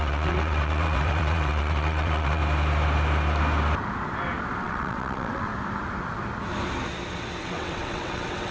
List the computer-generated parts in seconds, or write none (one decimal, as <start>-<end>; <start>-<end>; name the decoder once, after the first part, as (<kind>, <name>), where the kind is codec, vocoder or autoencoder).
0.0-2.4 (vocoder, WaveNeXt); 4.6-5.5; 7.4-8.5